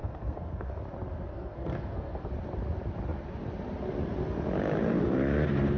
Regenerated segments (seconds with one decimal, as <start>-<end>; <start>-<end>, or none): 0.0-0.7; 1.3-2.3